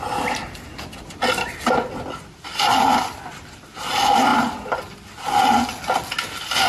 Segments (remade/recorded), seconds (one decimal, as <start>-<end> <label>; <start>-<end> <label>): 0.0-6.7 recorded